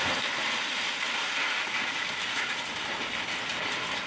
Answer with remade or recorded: recorded